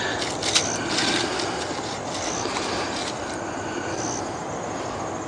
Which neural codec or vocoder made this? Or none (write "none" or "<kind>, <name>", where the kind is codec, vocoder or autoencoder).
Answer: none